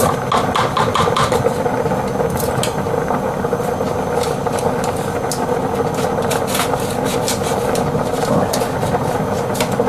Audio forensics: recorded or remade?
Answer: recorded